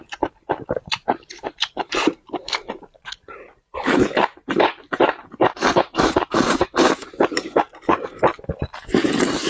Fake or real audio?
fake